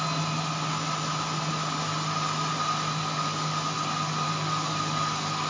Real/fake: real